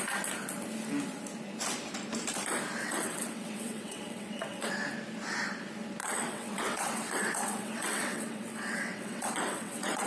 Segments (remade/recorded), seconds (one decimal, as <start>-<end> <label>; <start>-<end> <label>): 0.0-2.8 recorded; 2.8-4.7 remade; 4.7-6.0 recorded; 6.0-10.1 remade